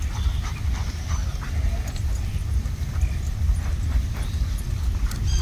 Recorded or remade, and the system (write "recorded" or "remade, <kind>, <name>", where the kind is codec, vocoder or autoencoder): recorded